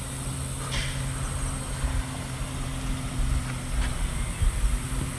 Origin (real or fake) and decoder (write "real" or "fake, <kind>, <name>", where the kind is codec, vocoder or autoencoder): real